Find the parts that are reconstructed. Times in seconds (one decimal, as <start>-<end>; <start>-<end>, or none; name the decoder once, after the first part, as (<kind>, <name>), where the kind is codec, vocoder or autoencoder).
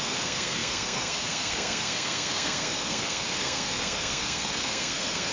0.0-5.3 (codec, SNAC)